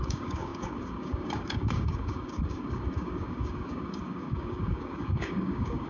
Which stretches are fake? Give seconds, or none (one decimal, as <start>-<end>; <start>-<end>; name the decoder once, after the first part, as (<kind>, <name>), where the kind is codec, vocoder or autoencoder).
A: 0.0-5.9 (codec, DAC)